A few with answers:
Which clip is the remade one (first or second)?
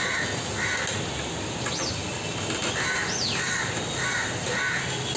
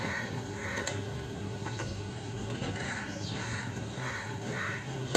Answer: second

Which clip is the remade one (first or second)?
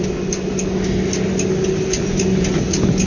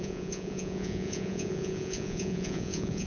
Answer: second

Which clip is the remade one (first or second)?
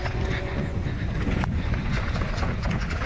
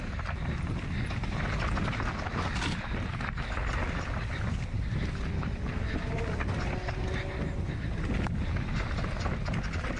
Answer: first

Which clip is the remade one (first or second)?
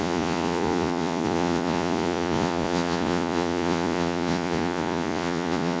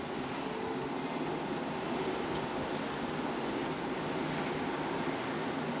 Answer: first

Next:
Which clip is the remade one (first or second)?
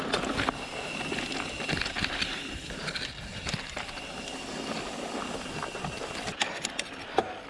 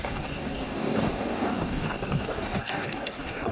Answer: second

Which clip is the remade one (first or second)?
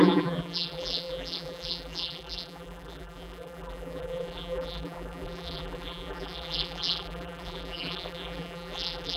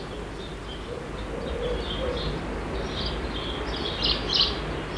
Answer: first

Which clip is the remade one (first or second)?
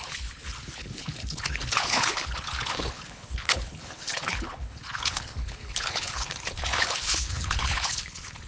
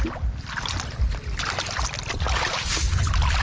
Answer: first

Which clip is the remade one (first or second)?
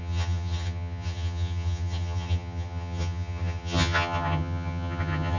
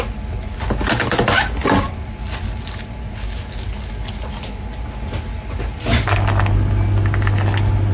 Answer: first